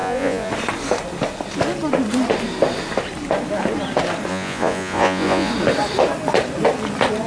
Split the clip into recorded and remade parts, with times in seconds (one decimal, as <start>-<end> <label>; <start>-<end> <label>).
0.0-0.5 remade; 0.5-4.3 recorded; 4.3-5.5 remade; 5.5-7.3 recorded